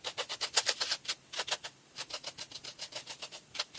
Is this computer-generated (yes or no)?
no